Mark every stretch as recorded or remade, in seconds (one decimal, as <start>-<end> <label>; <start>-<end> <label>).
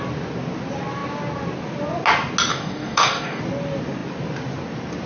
0.0-2.5 recorded; 2.5-3.4 remade; 3.4-5.1 recorded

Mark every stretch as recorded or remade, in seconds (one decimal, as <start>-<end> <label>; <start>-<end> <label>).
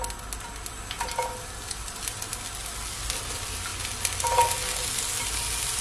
0.0-5.8 recorded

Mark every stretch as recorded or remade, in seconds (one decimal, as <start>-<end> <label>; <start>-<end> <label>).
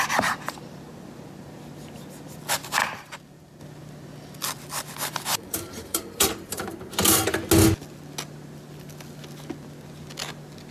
0.0-2.8 recorded; 2.8-3.6 remade; 3.6-5.3 recorded; 5.3-6.7 remade; 6.7-10.7 recorded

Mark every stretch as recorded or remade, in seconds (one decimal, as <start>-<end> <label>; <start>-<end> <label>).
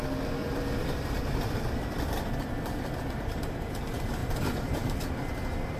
0.0-0.4 recorded; 0.4-3.4 remade; 3.4-4.2 recorded; 4.2-5.1 remade; 5.1-5.8 recorded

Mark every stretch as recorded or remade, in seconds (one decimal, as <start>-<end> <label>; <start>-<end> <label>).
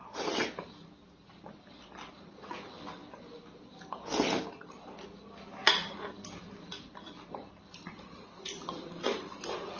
0.0-3.0 remade; 3.0-7.5 recorded; 7.5-9.8 remade